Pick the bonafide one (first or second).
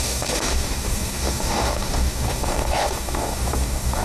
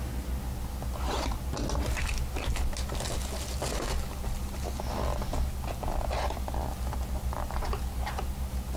second